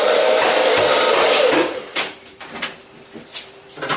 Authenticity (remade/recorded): remade